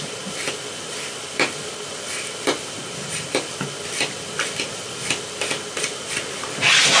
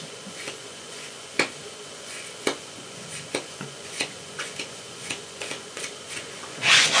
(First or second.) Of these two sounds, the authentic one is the first